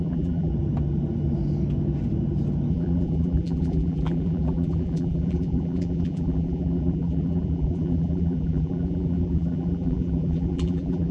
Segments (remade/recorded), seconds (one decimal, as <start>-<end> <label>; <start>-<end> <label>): 0.0-0.5 remade; 0.5-2.7 recorded; 2.7-11.1 remade